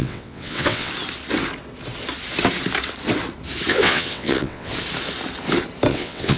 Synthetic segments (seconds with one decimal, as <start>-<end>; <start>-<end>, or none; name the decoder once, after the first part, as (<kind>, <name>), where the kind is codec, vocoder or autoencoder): 0.0-0.9 (vocoder, WaveNeXt); 3.7-4.7; 5.9-6.4